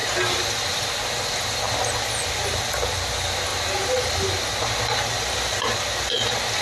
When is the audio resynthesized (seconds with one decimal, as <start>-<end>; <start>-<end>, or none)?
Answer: none